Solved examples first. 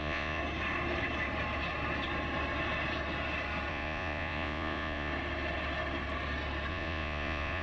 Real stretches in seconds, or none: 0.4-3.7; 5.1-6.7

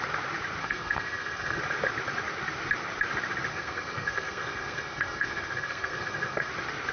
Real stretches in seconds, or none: 0.0-0.6; 1.6-3.5; 6.5-6.9

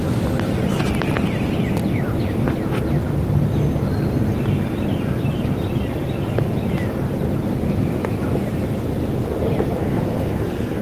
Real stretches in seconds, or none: 0.0-9.8

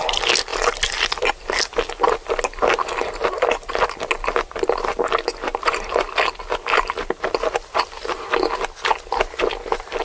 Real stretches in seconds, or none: 0.0-10.0

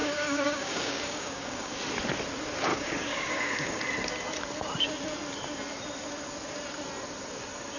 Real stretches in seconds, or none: 1.8-2.7; 3.8-7.8